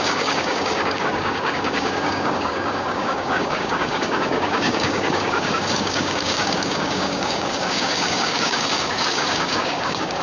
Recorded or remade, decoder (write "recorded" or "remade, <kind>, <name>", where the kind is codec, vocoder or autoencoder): remade, codec, DAC